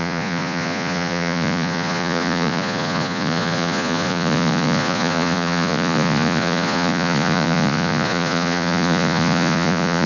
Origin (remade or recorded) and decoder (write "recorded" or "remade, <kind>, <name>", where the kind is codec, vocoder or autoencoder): remade, vocoder, Vocos